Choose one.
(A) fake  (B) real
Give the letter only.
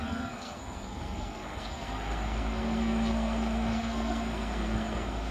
A